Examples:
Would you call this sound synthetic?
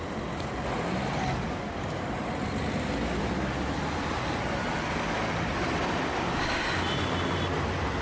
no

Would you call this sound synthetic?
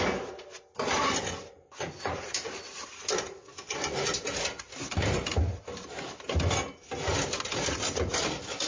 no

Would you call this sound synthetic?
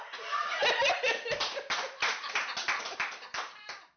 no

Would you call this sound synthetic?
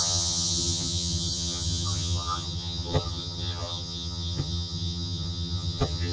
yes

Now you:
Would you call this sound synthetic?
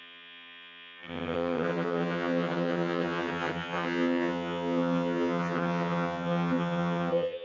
yes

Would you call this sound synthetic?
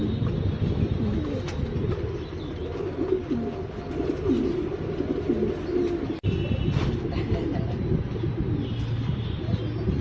no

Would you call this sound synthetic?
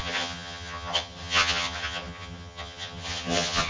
yes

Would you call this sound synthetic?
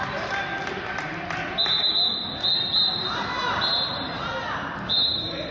no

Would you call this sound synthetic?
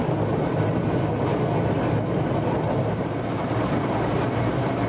no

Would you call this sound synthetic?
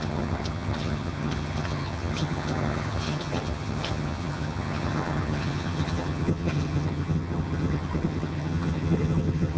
yes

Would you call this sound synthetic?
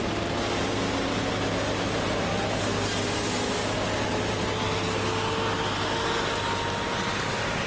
no